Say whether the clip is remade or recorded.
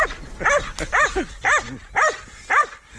recorded